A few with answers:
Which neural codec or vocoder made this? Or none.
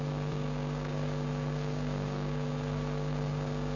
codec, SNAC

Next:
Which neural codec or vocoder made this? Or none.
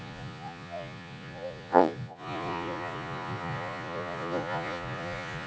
vocoder, Vocos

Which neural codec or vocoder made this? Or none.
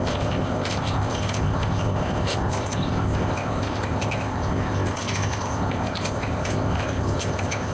codec, ZipCodec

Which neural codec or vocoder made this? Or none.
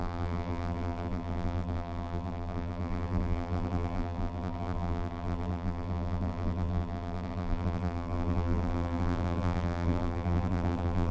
vocoder, BigVGAN v2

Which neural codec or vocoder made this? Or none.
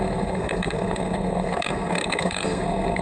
codec, SNAC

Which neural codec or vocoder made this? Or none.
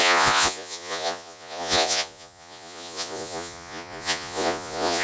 vocoder, Vocos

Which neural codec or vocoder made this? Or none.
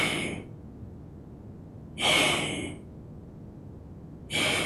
none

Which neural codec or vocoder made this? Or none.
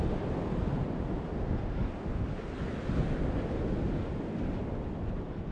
none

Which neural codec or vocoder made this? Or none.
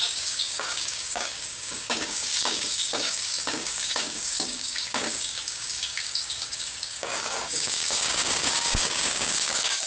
codec, DAC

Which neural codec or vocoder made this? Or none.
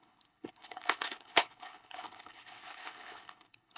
codec, HILCodec